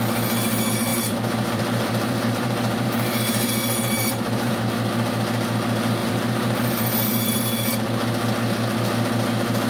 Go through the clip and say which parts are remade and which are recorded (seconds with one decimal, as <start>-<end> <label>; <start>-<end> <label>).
0.0-0.9 recorded; 0.9-4.5 remade; 4.5-6.0 recorded; 6.0-7.4 remade; 7.4-9.7 recorded